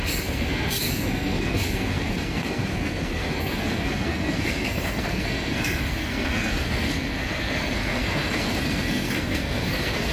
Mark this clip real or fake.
fake